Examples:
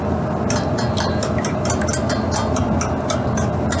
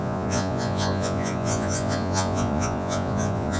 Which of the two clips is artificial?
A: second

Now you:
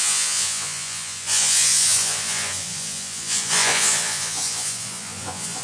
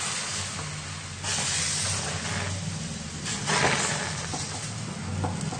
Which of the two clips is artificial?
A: first